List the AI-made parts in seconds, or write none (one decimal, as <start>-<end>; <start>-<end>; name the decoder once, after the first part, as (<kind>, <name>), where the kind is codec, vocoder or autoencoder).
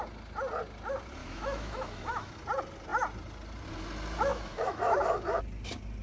1.2-2.3 (autoencoder, DAC-VAE); 4.3-5.4